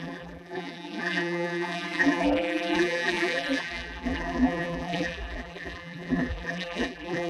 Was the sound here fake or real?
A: fake